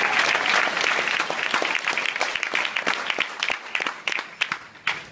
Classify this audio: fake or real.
real